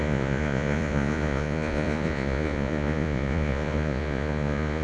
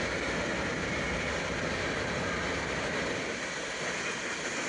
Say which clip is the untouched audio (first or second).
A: second